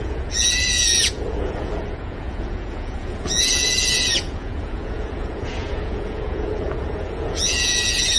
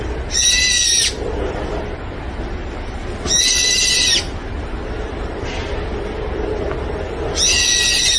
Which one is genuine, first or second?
second